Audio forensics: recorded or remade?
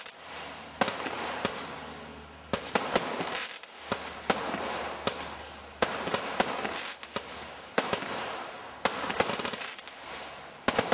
recorded